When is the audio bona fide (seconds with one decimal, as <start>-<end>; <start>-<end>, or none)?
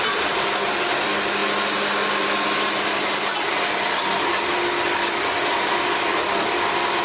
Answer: 0.0-7.0